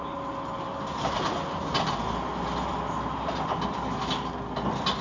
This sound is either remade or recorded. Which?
recorded